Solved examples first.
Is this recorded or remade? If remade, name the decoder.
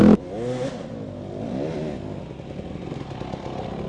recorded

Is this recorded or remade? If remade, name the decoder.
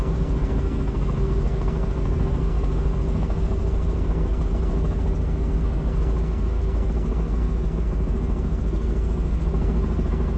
remade, codec, SNAC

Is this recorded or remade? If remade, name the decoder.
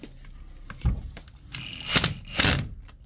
recorded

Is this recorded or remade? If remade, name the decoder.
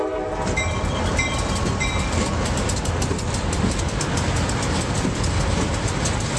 recorded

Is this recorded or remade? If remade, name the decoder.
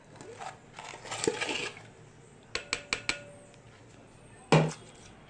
recorded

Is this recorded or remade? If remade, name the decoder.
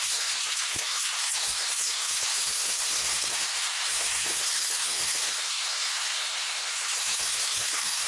remade, codec, SNAC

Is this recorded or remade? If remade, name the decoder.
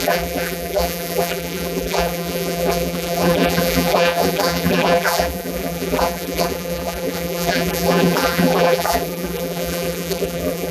remade, vocoder, BigVGAN v2